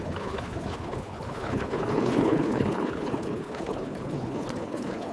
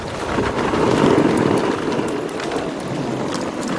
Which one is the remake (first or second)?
first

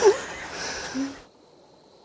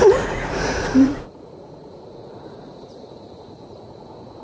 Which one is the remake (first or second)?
second